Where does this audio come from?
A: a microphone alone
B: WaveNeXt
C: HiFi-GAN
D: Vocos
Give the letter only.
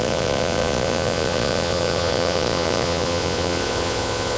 D